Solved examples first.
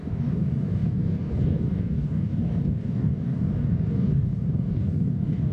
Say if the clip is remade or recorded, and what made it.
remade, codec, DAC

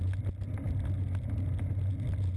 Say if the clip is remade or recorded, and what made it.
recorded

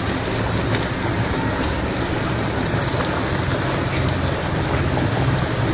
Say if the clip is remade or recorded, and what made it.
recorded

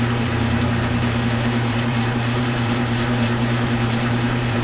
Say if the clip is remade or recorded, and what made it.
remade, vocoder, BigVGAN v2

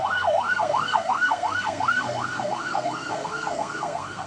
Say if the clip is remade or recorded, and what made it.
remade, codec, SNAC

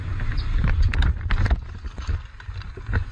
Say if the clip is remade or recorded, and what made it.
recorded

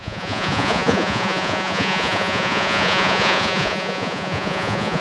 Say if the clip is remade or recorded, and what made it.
remade, vocoder, Vocos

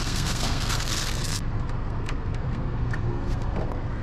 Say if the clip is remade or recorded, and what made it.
remade, codec, SNAC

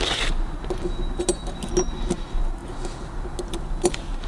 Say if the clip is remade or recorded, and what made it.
recorded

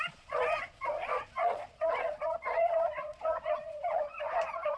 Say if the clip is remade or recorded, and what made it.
remade, vocoder, Vocos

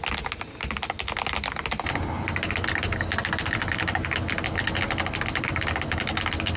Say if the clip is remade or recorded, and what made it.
recorded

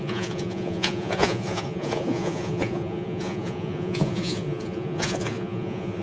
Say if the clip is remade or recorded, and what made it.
remade, vocoder, Vocos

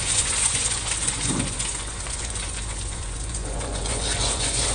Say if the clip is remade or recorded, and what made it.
remade, vocoder, Vocos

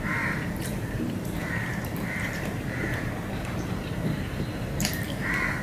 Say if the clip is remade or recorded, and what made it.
remade, vocoder, BigVGAN v2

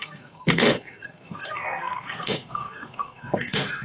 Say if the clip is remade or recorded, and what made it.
remade, codec, SNAC